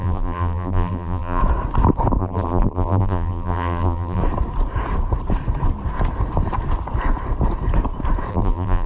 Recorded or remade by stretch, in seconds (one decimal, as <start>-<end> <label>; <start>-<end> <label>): 0.0-1.4 remade; 1.4-2.2 recorded; 2.2-4.2 remade; 4.2-8.3 recorded; 8.3-8.9 remade